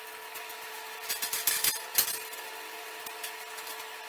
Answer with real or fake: real